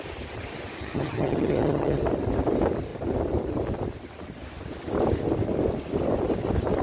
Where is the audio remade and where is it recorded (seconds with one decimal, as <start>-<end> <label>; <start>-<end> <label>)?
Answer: 0.0-0.8 recorded; 0.8-2.0 remade; 2.0-6.8 recorded